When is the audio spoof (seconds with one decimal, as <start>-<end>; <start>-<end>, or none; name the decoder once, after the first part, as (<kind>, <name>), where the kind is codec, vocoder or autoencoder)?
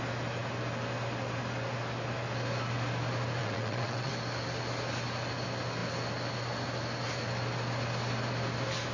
3.4-4.1 (vocoder, WaveNeXt)